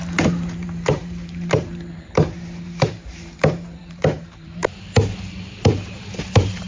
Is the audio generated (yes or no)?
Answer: yes